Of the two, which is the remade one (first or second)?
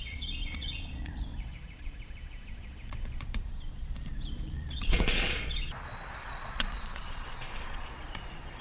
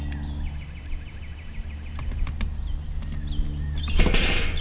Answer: first